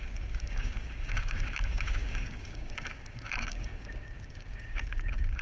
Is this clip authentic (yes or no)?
no